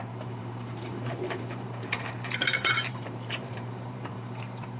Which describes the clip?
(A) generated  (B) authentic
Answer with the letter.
A